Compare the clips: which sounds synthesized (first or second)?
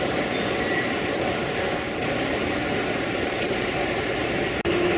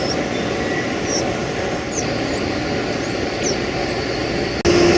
first